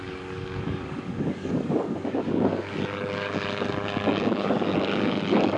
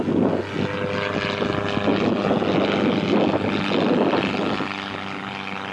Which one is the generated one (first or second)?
first